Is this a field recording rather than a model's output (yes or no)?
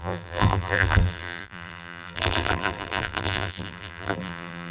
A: no